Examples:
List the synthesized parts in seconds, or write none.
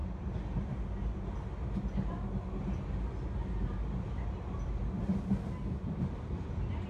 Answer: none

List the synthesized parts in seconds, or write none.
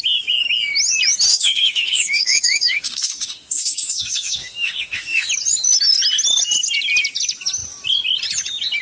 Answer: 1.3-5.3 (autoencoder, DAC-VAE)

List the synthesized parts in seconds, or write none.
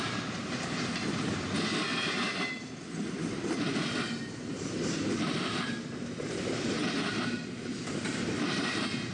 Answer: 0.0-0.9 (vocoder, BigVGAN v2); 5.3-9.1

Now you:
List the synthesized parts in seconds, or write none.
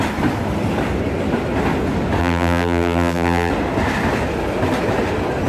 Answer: 2.2-3.5 (vocoder, BigVGAN v2)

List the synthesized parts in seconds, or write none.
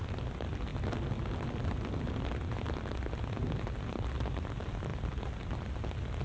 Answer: none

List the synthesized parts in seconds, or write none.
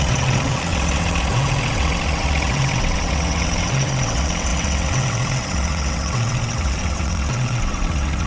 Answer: 0.0-8.3 (vocoder, WaveNeXt)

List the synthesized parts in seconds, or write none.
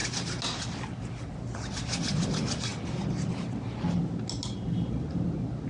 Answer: none